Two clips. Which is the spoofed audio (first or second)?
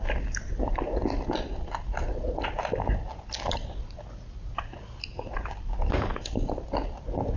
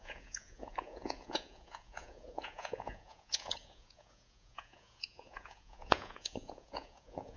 second